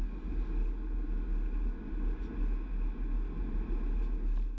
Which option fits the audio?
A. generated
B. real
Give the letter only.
B